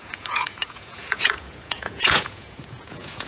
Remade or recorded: remade